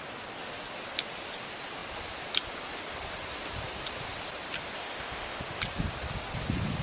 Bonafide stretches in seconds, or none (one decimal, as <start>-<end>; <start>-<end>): 0.0-4.8; 5.4-6.8